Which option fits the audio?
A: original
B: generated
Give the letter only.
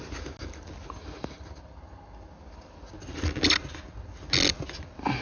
A